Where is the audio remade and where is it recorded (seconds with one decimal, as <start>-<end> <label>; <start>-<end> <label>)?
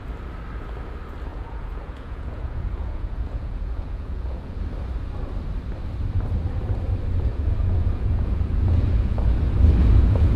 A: 0.0-1.3 recorded; 1.3-4.6 remade; 4.6-7.3 recorded; 7.3-9.3 remade; 9.3-9.8 recorded; 9.8-10.4 remade